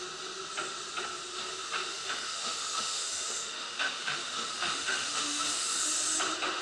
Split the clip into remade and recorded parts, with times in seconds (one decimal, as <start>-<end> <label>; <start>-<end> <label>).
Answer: 0.0-1.9 recorded; 1.9-5.8 remade; 5.8-6.6 recorded